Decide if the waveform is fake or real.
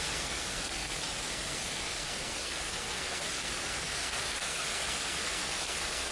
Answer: fake